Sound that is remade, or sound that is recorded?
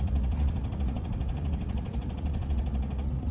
remade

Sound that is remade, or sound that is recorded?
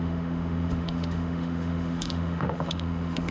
remade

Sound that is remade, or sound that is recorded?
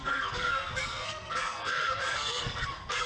remade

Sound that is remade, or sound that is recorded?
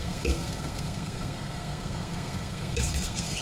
remade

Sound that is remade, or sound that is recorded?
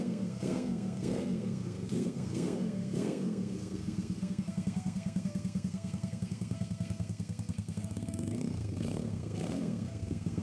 remade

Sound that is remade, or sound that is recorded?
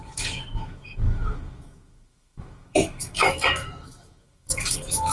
remade